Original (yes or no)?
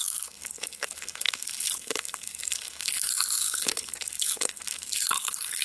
no